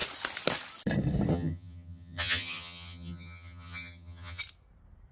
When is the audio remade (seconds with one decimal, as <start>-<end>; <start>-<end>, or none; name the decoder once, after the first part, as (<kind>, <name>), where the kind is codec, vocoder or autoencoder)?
1.3-4.4 (vocoder, HiFi-GAN)